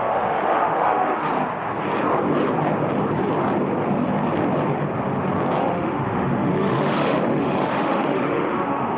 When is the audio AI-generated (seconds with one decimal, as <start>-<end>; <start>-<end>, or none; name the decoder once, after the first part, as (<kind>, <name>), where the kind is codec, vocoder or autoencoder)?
0.0-1.3 (autoencoder, DAC-VAE); 5.6-9.0